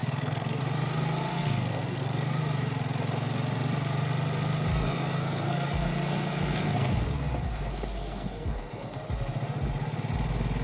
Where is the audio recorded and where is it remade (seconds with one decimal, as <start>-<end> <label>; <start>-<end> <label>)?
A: 0.0-0.6 remade; 0.6-1.3 recorded; 1.3-2.4 remade; 2.4-4.7 recorded; 4.7-9.0 remade; 9.0-10.6 recorded